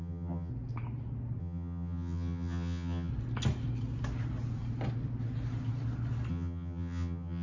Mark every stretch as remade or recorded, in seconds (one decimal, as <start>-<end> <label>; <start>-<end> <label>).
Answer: 0.0-0.5 remade; 0.5-1.4 recorded; 1.4-3.1 remade; 3.1-6.3 recorded; 6.3-7.4 remade